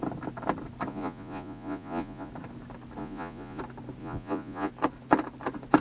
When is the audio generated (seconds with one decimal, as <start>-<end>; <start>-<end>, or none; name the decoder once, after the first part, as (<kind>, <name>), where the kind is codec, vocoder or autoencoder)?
0.9-2.3 (vocoder, Vocos); 3.0-3.6; 4.0-4.7